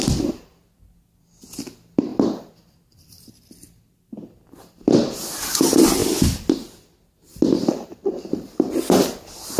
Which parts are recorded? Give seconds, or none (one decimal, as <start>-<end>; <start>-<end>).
0.0-7.9; 8.5-9.6